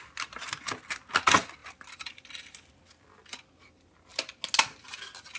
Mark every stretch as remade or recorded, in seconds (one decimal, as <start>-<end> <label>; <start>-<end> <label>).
0.0-5.4 recorded